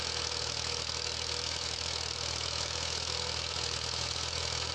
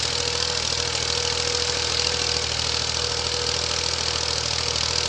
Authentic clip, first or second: second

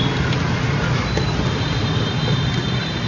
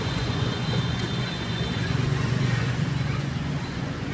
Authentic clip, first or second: first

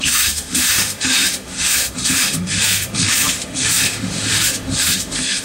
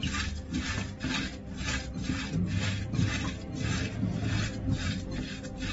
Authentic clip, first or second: second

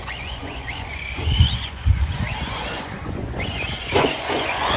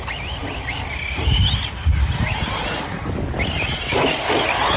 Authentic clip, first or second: second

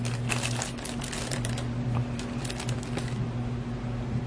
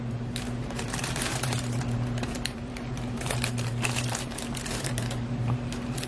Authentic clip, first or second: first